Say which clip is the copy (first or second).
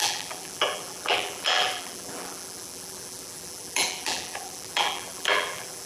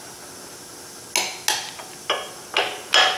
first